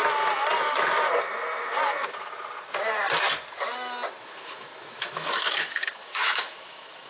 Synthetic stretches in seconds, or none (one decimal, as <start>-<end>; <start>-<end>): 4.2-7.1